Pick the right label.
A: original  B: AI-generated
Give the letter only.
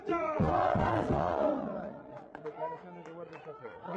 B